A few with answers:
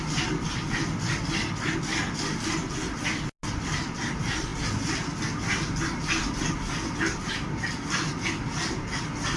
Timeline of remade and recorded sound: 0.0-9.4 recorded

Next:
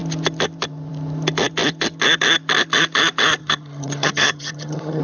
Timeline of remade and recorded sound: 0.0-3.4 recorded; 3.4-5.0 remade

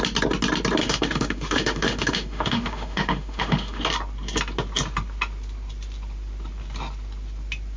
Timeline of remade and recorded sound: 0.0-0.8 recorded; 0.8-3.8 remade; 3.8-7.8 recorded

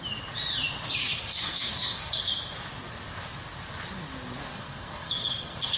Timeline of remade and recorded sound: 0.0-1.0 recorded; 1.0-2.3 remade; 2.3-4.5 recorded; 4.5-5.8 remade

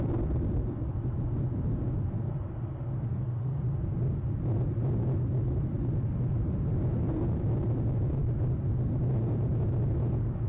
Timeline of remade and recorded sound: 0.0-3.1 recorded; 3.1-3.6 remade; 3.6-10.5 recorded

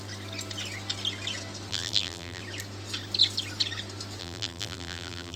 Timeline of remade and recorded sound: 0.0-1.7 recorded; 1.7-2.4 remade; 2.4-4.2 recorded; 4.2-5.4 remade

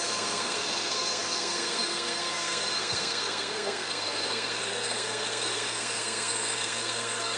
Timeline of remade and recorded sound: 0.0-7.4 remade